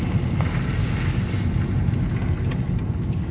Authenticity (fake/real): real